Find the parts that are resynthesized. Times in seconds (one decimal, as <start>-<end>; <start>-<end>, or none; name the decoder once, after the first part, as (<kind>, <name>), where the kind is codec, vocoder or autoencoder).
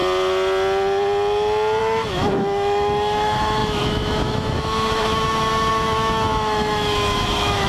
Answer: 1.8-7.7 (autoencoder, DAC-VAE)